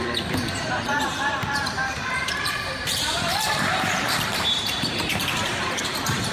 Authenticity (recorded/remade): remade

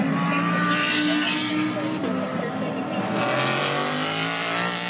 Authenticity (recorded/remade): recorded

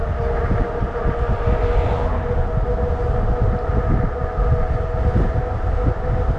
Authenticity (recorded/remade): recorded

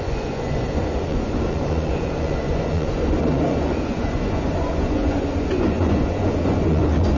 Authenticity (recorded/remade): remade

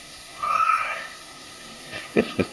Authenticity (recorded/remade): remade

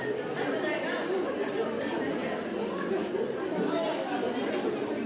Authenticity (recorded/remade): recorded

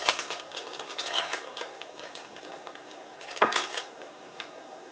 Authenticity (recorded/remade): remade